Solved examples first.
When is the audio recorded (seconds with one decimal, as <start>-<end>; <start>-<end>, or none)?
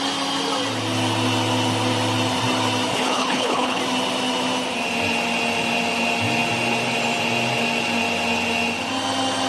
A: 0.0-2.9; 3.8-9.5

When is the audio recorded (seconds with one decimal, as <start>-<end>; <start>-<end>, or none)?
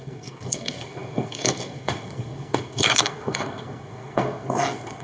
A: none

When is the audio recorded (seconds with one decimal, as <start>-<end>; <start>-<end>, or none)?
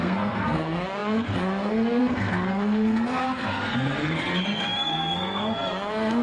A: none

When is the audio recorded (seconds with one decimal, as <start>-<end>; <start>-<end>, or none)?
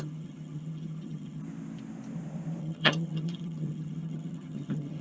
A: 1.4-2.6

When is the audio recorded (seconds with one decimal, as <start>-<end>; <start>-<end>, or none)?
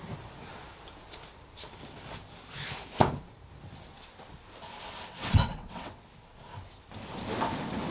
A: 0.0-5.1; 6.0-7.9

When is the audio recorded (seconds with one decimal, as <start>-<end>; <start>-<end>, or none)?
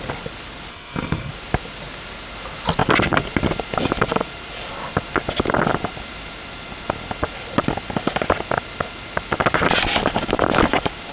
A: 0.0-0.7; 1.3-11.1